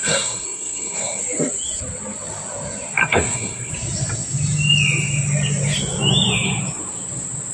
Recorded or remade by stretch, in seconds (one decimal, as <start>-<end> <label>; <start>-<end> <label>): 0.0-1.2 remade; 1.2-3.0 recorded; 3.0-3.7 remade; 3.7-7.5 recorded